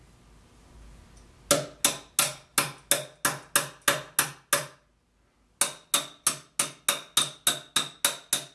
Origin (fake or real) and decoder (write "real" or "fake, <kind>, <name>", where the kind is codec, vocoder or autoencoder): real